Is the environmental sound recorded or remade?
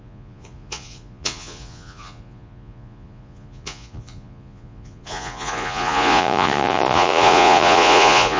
remade